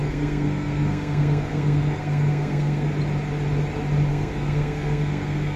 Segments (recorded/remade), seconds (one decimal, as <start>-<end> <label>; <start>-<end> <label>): 0.0-2.9 remade; 2.9-4.1 recorded; 4.1-5.6 remade